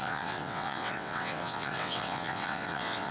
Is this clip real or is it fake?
fake